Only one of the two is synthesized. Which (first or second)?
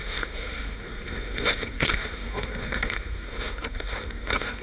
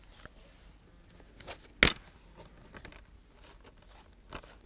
first